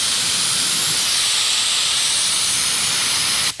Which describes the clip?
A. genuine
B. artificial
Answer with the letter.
A